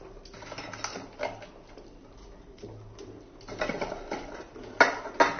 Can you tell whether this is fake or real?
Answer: real